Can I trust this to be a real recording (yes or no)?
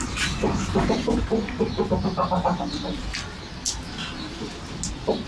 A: yes